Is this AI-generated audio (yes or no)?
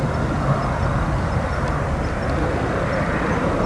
no